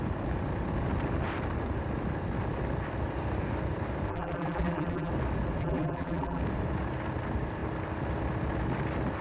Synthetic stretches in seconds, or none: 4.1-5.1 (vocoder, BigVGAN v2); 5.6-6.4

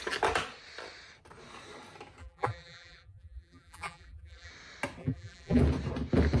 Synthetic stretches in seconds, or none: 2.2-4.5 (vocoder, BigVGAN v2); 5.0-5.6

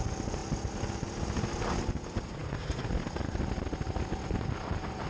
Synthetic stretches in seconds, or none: 2.4-3.4 (vocoder, BigVGAN v2)